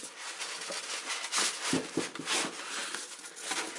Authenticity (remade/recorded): recorded